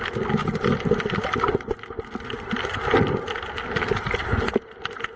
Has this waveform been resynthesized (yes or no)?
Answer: no